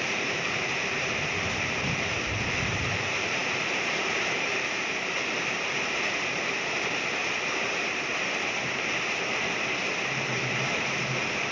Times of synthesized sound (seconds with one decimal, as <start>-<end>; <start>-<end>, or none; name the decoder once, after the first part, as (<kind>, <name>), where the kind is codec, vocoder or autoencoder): 0.0-8.1 (vocoder, BigVGAN v2); 10.5-11.5